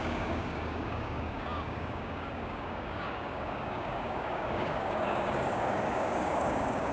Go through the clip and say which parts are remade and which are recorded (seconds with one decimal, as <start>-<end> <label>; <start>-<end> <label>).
0.0-6.9 remade